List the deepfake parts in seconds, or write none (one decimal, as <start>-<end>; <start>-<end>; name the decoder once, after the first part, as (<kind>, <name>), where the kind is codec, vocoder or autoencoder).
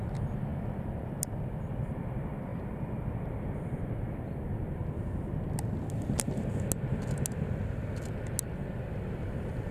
0.0-4.8 (vocoder, BigVGAN v2); 9.2-9.7